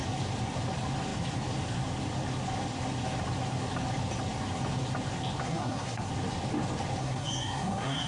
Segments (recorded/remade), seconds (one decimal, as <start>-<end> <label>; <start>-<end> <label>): 0.0-5.4 recorded; 5.4-6.1 remade; 6.1-7.0 recorded; 7.0-8.1 remade